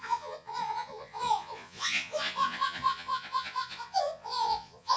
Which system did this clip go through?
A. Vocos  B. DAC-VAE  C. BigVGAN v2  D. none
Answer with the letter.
A